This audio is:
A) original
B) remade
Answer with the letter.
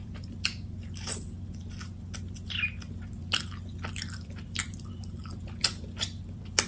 A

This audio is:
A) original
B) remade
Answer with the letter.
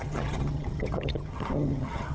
B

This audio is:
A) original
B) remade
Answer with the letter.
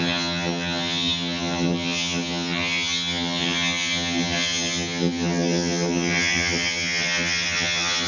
B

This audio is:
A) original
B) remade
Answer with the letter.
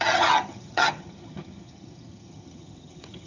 B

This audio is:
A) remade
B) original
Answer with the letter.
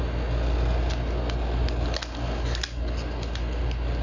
B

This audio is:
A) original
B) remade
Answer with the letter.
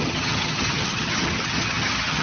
B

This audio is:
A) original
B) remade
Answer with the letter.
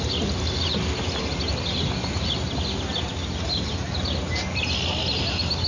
A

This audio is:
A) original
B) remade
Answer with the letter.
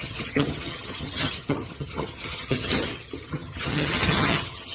B